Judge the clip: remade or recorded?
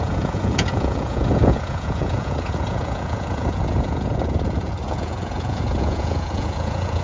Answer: remade